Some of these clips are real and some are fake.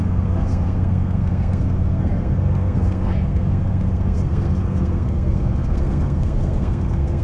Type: fake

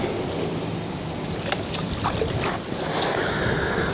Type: real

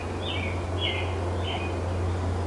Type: real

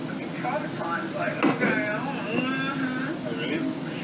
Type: real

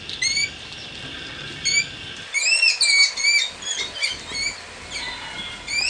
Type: real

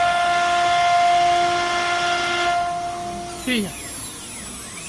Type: real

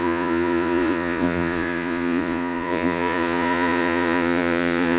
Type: fake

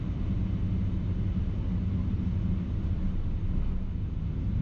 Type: real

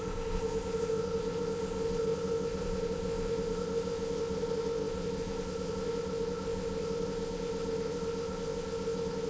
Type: fake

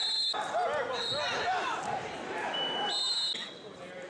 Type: real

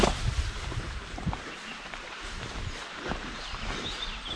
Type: fake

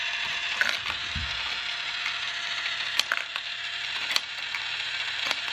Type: fake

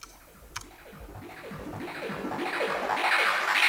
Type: real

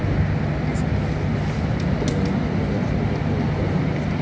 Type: real